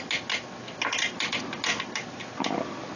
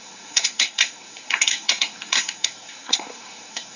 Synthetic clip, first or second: second